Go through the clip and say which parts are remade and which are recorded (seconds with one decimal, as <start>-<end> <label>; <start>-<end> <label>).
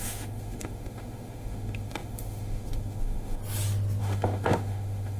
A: 0.0-3.4 remade; 3.4-4.0 recorded; 4.0-5.2 remade